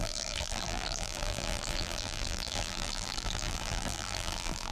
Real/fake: fake